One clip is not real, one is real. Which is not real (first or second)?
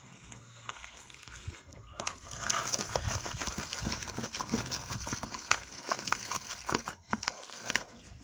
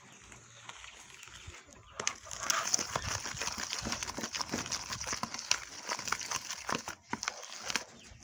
first